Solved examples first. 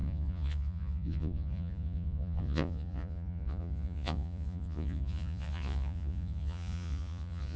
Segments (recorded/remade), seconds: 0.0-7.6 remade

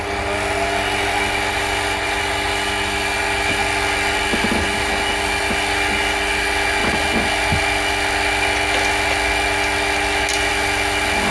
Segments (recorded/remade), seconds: 0.0-11.3 recorded